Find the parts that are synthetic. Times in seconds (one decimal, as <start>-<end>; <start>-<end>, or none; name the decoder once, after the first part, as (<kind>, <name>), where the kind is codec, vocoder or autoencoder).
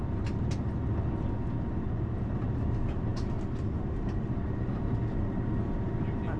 none